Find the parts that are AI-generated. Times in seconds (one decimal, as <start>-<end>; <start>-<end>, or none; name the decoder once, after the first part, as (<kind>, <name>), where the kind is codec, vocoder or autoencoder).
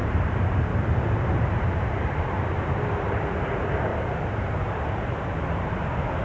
0.0-3.2 (vocoder, BigVGAN v2); 3.9-6.2